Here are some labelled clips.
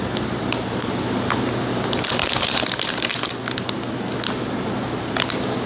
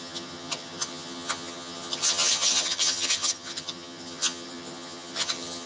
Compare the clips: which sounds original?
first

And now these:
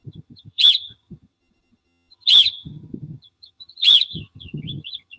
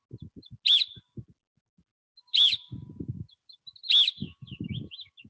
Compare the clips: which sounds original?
second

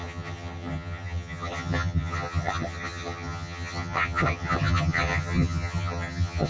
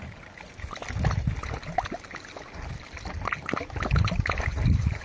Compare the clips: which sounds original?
second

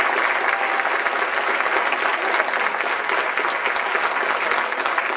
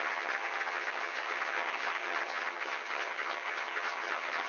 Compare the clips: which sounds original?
first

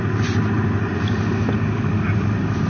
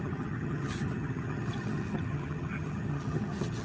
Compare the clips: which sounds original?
first